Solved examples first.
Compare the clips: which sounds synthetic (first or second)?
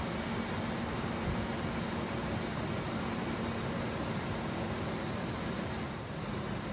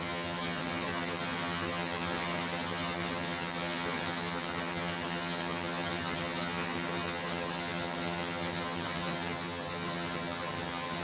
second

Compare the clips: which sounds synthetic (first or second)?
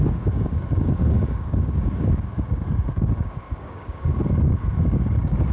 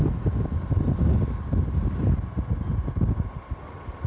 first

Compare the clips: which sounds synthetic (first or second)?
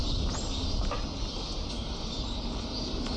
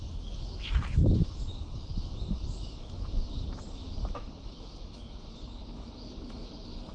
second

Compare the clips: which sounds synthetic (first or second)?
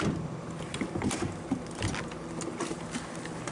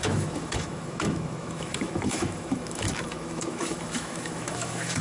second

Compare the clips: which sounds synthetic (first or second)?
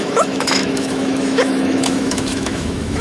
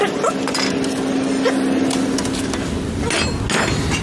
first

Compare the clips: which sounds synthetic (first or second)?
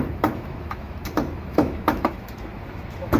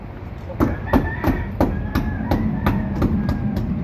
first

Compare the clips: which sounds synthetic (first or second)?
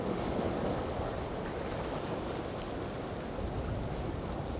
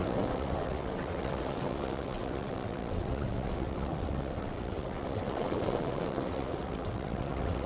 second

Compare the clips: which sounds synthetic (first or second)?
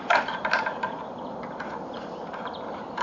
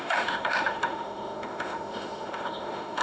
second